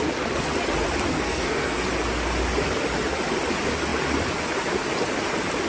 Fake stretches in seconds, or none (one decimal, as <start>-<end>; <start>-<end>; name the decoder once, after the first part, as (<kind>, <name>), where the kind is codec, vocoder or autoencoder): 1.1-1.8 (codec, SNAC)